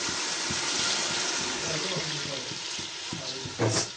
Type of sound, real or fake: real